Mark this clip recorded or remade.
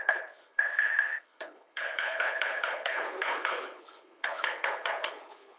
remade